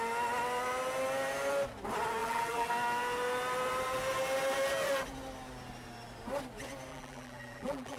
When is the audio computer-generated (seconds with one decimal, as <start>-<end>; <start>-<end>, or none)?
2.2-2.7; 6.9-8.0